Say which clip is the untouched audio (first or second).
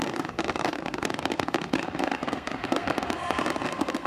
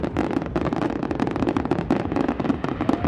second